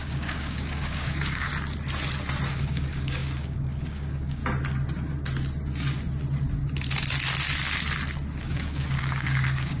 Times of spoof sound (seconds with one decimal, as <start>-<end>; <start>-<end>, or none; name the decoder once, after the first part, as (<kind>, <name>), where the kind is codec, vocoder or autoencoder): 0.0-1.5 (codec, DAC); 2.5-4.4; 8.4-9.8